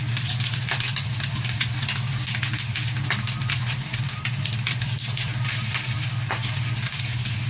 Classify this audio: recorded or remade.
remade